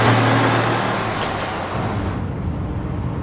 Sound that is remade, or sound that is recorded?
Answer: recorded